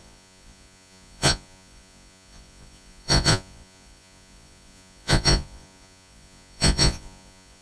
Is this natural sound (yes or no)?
no